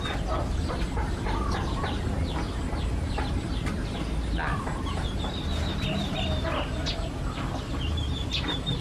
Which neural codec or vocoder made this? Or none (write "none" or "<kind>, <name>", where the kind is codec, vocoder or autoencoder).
none